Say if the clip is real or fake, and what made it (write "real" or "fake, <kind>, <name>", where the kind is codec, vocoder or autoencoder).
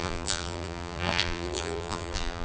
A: fake, vocoder, BigVGAN v2